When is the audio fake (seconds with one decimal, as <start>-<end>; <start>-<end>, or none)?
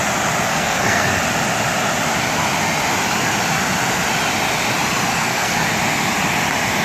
0.5-1.1; 5.1-5.7